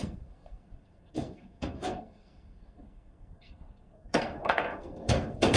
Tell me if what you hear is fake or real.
fake